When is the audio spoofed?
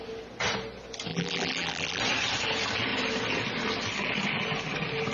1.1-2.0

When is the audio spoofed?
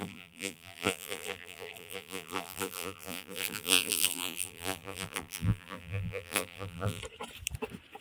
0.0-7.0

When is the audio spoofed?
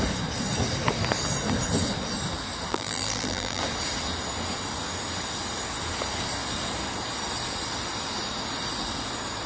2.7-3.6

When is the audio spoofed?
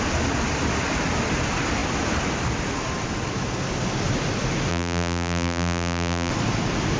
4.7-6.3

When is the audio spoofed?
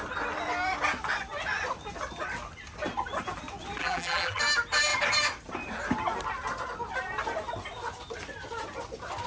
3.8-4.4